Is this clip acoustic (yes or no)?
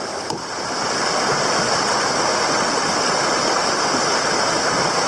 no